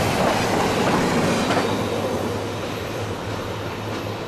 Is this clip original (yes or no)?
yes